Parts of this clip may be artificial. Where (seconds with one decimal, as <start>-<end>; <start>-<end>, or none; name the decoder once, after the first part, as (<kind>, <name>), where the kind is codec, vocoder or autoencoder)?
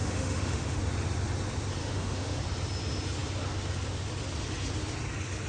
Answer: 0.0-0.8 (autoencoder, DAC-VAE); 1.8-2.4